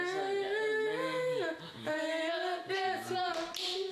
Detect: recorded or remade recorded